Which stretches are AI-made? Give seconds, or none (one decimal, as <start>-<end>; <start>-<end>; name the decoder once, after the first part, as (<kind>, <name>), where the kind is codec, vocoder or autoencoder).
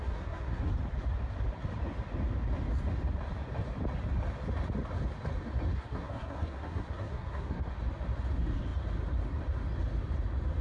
0.0-0.7 (codec, SNAC); 5.7-7.7